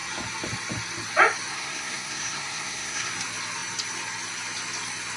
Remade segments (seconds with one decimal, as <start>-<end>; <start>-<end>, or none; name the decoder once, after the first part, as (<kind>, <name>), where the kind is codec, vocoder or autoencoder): 1.5-3.1 (codec, SNAC)